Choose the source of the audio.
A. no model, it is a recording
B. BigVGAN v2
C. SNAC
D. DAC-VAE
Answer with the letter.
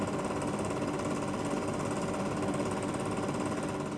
A